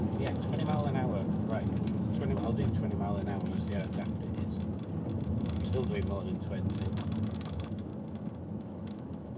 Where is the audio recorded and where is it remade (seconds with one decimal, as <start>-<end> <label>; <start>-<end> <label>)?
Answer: 0.0-0.8 remade; 0.8-1.3 recorded; 1.3-3.8 remade; 3.8-5.3 recorded; 5.3-7.9 remade; 7.9-8.6 recorded; 8.6-9.4 remade